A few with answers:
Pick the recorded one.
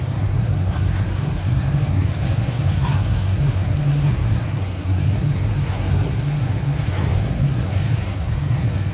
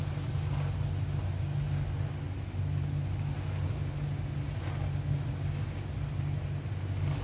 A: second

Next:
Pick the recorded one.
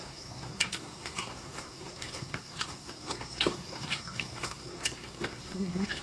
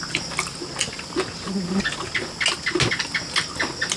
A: second